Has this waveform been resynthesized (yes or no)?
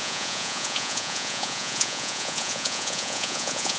yes